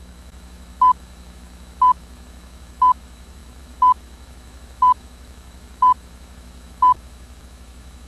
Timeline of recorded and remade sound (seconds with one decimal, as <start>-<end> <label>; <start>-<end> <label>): 0.0-8.1 remade